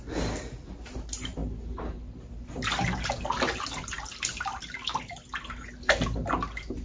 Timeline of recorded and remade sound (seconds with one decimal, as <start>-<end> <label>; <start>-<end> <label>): 0.0-6.8 recorded